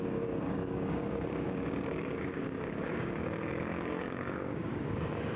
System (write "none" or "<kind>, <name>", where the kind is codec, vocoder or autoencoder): codec, DAC